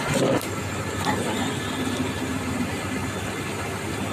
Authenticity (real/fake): real